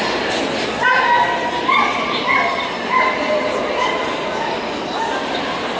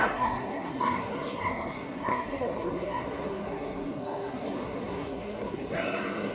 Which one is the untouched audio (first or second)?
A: first